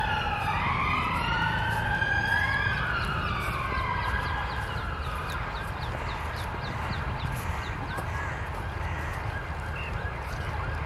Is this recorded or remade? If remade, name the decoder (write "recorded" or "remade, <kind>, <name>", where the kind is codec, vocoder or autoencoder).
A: recorded